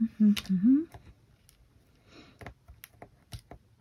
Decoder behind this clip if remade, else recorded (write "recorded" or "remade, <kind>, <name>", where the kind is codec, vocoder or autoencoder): recorded